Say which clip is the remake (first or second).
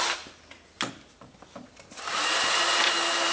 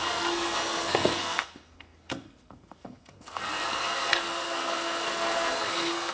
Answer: second